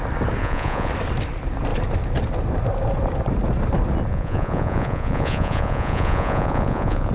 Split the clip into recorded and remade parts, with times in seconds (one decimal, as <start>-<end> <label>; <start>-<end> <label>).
0.0-0.4 recorded; 0.4-0.9 remade; 0.9-4.1 recorded; 4.1-7.1 remade